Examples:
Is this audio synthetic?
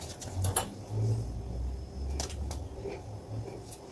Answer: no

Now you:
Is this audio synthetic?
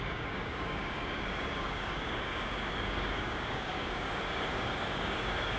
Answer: yes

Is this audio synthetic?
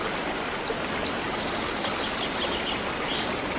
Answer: no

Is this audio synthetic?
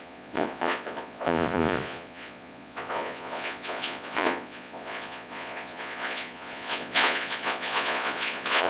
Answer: yes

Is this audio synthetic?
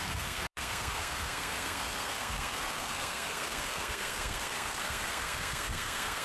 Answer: yes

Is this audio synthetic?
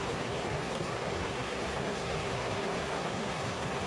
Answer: yes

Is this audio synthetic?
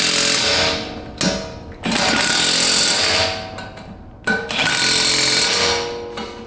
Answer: no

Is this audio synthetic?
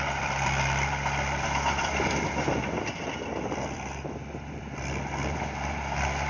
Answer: yes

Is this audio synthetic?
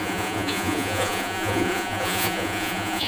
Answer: yes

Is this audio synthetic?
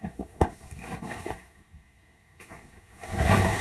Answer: yes